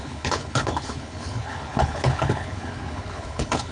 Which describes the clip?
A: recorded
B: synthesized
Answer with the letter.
B